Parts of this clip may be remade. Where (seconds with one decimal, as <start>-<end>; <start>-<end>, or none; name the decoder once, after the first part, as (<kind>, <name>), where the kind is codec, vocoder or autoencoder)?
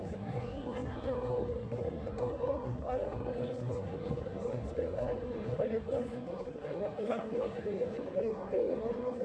0.0-9.2 (codec, SNAC)